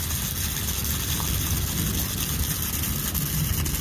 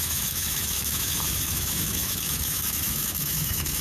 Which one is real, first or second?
first